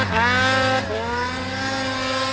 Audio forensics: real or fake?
real